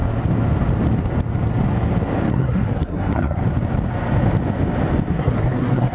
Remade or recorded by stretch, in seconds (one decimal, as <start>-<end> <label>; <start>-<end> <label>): 0.0-2.3 recorded; 2.3-3.4 remade; 3.4-5.1 recorded; 5.1-5.9 remade